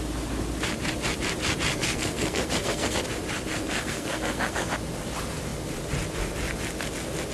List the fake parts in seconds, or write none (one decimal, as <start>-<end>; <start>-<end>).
1.7-3.0; 3.5-4.7